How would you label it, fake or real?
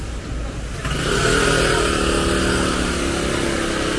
real